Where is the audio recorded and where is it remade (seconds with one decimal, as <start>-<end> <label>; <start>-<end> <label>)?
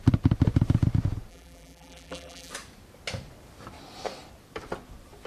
0.0-1.3 recorded; 1.3-2.5 remade; 2.5-5.3 recorded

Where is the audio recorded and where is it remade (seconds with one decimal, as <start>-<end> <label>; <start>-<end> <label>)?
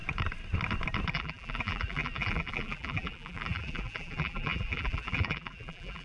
0.0-1.1 recorded; 1.1-6.0 remade